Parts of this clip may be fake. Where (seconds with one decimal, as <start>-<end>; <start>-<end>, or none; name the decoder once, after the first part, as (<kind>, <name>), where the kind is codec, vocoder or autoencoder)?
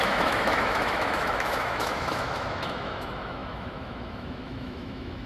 0.0-5.3 (autoencoder, DAC-VAE)